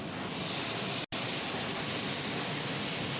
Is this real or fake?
real